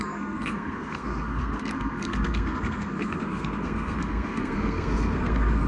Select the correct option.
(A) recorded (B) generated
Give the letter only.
B